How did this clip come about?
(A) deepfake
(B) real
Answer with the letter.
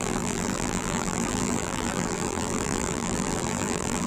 A